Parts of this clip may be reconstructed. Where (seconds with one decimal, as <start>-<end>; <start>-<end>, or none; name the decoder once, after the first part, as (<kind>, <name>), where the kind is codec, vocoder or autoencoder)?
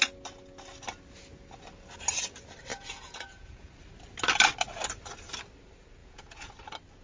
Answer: 2.7-3.7 (vocoder, Vocos); 6.0-6.5